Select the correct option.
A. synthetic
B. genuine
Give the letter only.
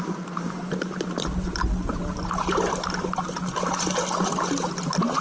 B